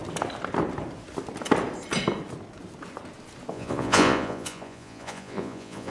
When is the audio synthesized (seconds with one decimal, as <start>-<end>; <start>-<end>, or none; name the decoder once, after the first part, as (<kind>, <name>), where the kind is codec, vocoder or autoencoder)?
3.5-5.9 (vocoder, Vocos)